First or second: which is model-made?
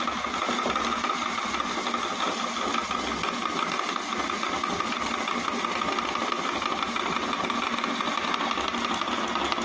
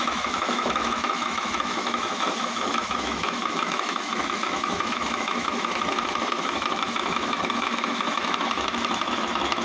second